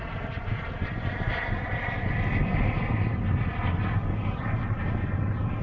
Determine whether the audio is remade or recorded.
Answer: recorded